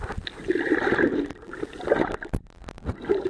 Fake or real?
real